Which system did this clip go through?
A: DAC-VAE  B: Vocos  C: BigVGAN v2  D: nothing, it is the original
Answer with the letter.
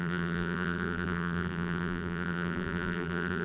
C